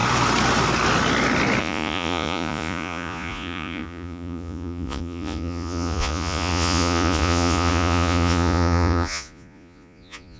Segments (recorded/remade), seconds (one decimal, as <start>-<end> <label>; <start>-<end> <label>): 0.0-1.6 recorded; 1.6-10.4 remade